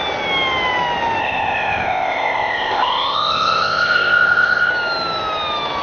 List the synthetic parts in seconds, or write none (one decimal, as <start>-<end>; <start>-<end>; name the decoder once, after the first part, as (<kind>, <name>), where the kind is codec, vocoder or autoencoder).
1.2-4.7 (codec, ZipCodec)